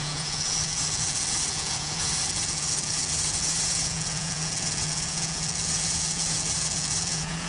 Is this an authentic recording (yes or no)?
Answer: no